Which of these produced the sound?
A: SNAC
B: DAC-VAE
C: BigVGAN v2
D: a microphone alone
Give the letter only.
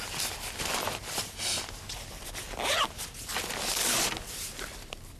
D